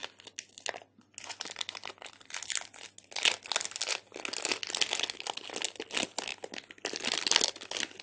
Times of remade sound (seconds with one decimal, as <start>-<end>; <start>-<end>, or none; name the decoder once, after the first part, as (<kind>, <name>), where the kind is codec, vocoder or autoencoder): none